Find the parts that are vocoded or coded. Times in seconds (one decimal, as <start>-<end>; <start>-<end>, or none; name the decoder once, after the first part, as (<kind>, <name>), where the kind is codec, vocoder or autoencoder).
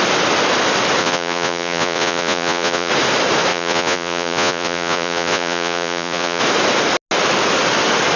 1.0-2.9 (vocoder, Vocos); 3.5-6.4